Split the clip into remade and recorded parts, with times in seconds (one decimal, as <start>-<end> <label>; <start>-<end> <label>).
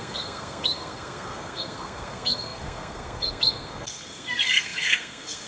0.0-5.5 remade